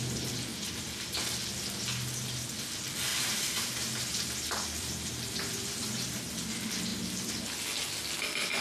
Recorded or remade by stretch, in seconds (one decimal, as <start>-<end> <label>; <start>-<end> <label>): 0.0-0.5 recorded; 0.5-1.1 remade; 1.1-3.1 recorded; 3.1-6.3 remade; 6.3-8.6 recorded